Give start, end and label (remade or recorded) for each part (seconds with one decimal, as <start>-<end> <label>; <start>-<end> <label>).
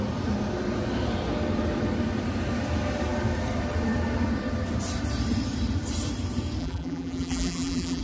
0.0-6.6 recorded; 6.6-8.0 remade